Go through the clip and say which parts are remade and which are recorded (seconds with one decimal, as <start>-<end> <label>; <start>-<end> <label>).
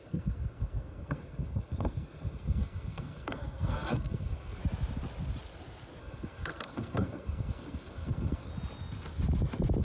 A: 0.0-4.6 remade; 4.6-6.0 recorded; 6.0-8.5 remade; 8.5-9.8 recorded